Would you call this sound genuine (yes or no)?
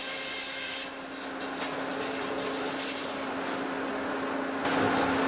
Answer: yes